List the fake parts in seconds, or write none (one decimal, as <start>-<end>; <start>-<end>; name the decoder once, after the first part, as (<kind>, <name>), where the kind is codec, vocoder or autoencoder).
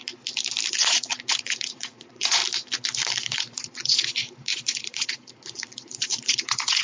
0.7-2.4 (vocoder, Vocos); 3.2-6.8